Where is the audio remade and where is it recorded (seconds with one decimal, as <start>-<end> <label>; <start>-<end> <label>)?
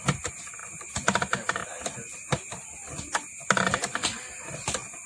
0.0-5.1 recorded